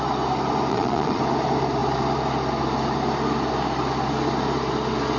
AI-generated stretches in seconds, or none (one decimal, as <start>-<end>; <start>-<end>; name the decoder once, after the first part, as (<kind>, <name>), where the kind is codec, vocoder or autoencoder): 0.7-1.2 (vocoder, Vocos)